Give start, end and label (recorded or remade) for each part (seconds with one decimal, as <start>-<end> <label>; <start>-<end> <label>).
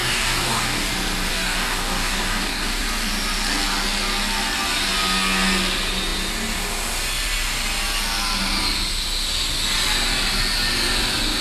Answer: 0.0-0.9 remade; 0.9-1.3 recorded; 1.3-2.8 remade; 2.8-11.4 recorded